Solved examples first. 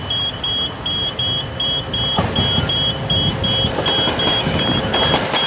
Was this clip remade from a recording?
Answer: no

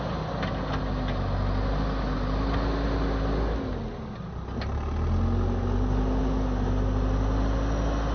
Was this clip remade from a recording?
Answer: no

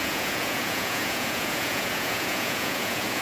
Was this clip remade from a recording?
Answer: yes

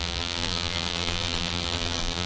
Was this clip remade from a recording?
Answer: yes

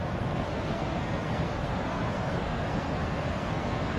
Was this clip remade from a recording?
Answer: yes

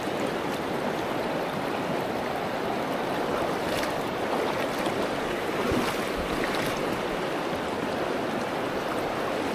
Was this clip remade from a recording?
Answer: no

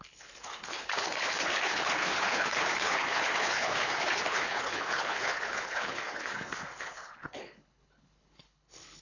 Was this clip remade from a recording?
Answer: yes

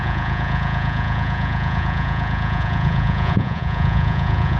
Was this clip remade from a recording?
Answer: yes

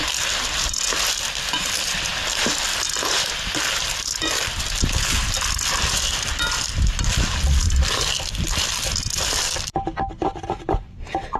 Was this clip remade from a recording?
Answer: no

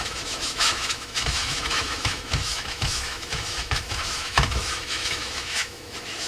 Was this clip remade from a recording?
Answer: yes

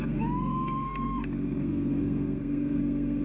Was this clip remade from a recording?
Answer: yes